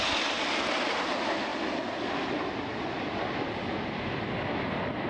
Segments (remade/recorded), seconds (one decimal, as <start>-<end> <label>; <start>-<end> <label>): 0.0-5.1 recorded